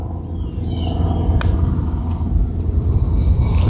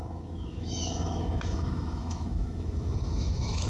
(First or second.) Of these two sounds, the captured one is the first